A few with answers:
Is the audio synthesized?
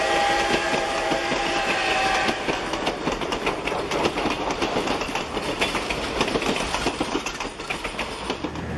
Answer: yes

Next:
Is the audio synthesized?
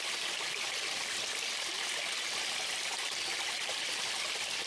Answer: no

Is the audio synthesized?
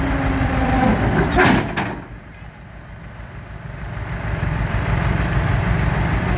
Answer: no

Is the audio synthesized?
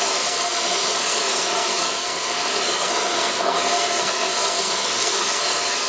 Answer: yes